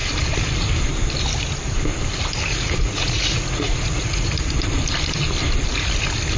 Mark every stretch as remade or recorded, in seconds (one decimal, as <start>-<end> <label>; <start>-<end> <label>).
0.0-2.5 recorded; 2.5-4.3 remade; 4.3-6.4 recorded